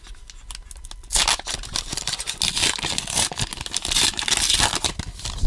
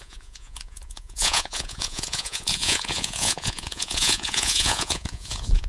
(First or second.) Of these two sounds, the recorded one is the first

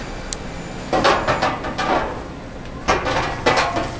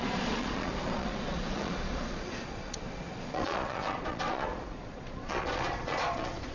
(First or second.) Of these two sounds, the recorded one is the first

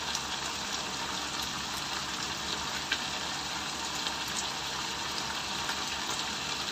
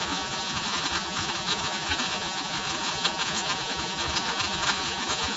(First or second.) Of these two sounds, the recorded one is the first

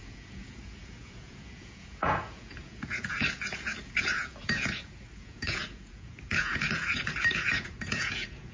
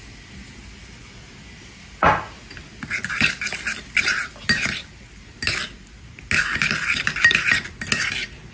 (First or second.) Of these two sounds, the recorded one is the second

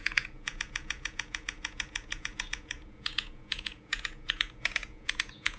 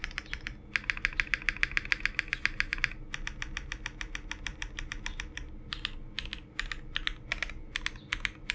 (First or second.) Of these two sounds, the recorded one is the second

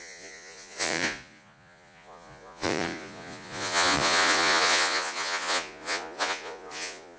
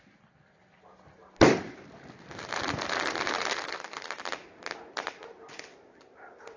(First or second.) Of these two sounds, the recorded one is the second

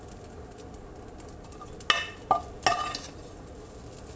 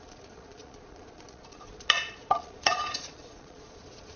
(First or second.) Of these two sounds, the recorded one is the first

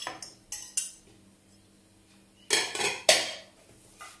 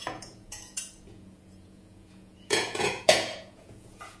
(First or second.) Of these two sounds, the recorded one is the first